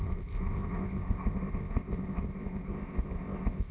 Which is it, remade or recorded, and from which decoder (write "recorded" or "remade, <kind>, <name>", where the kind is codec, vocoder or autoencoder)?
remade, codec, ZipCodec